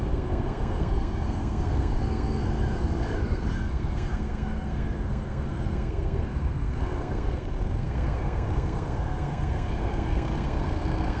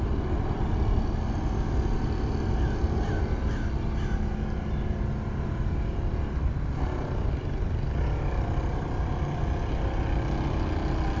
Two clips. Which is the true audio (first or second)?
second